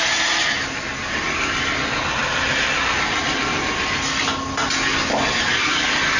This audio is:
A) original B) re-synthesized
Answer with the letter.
A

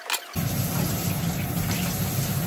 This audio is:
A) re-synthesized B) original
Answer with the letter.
B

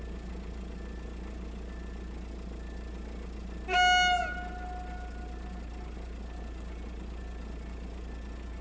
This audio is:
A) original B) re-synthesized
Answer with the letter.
A